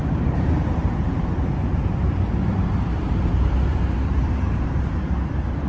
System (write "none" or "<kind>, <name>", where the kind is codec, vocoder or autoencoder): vocoder, BigVGAN v2